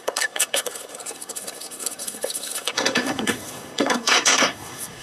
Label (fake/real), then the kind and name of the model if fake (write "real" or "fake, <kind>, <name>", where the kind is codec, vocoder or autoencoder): fake, codec, SNAC